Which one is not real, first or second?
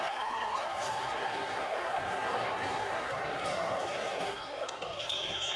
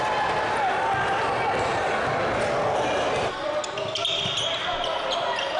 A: first